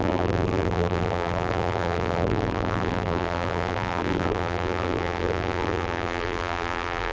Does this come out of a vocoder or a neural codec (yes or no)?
yes